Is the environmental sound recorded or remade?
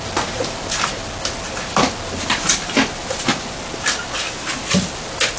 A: recorded